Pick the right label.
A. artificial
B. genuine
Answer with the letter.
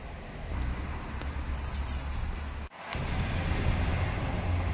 B